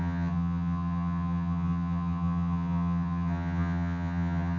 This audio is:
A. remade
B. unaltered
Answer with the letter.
A